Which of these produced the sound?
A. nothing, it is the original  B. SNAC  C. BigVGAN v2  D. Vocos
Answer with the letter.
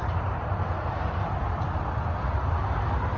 A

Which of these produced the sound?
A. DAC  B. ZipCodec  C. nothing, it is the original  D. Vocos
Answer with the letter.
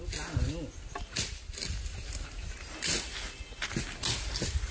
C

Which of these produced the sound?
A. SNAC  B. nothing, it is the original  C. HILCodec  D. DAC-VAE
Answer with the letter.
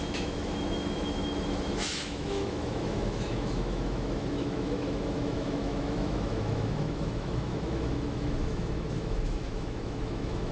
D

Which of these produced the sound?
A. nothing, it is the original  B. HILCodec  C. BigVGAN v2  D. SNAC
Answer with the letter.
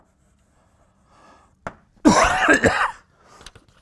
A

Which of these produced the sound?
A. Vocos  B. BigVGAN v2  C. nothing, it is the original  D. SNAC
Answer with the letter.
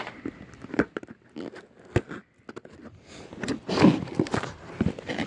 C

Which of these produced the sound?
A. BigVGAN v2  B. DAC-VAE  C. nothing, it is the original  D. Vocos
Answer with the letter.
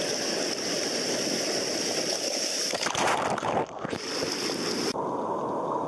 C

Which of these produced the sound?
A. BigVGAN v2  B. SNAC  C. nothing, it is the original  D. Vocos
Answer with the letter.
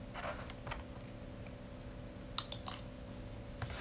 C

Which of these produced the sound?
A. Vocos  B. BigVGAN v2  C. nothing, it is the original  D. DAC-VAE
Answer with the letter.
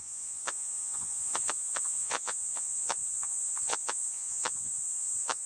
A